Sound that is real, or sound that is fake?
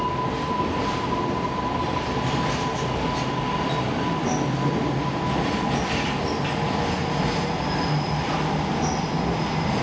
real